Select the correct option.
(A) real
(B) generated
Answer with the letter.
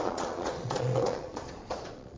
B